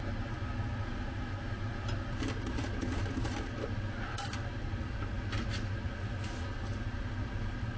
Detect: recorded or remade recorded